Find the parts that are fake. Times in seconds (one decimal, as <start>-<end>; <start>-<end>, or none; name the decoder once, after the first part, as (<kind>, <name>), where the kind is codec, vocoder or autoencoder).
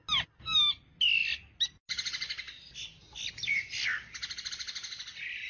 none